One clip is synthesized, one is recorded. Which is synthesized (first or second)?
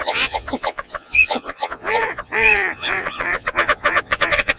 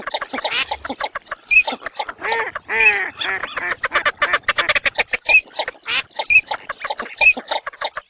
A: first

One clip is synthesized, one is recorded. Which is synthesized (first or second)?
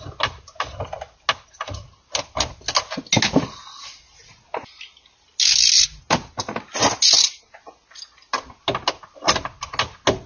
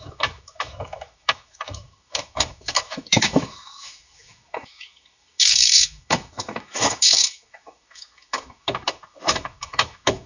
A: second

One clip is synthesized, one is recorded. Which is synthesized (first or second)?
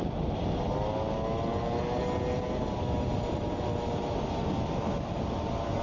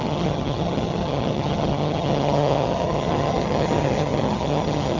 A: second